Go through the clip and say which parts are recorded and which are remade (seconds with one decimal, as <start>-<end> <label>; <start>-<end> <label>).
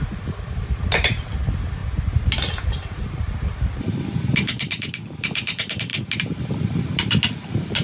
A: 0.0-1.8 recorded; 1.8-3.6 remade; 3.6-7.8 recorded